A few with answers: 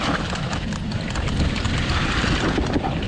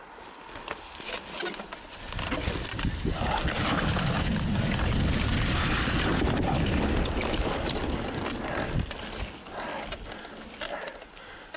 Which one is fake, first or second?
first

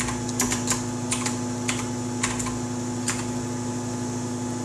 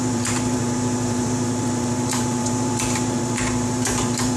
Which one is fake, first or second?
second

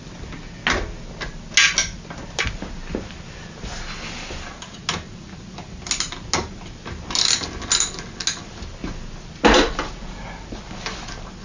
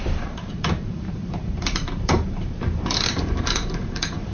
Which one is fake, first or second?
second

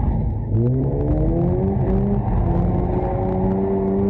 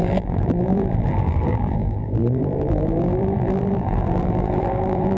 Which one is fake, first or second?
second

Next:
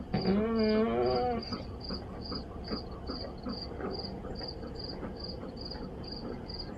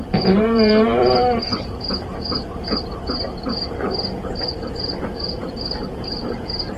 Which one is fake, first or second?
second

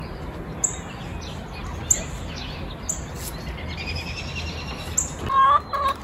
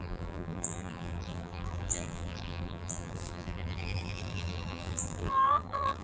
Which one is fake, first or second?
second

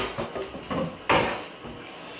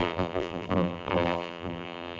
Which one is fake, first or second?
second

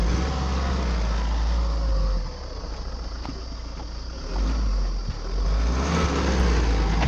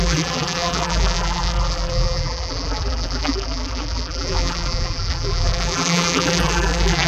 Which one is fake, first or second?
second